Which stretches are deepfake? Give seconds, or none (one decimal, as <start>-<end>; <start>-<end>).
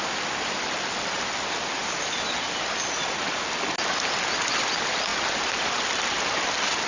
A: none